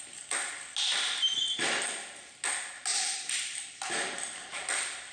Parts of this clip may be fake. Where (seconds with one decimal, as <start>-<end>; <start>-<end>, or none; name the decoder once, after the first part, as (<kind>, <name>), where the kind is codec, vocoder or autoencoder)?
2.9-4.5 (vocoder, BigVGAN v2)